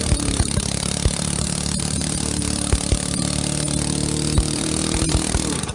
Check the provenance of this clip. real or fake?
fake